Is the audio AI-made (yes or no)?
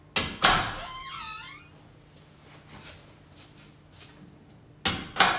no